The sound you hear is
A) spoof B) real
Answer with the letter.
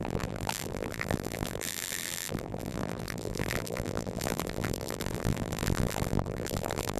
A